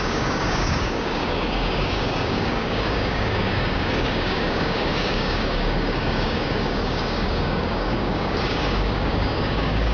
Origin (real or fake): fake